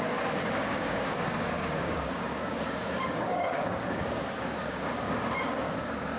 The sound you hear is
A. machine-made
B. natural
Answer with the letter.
A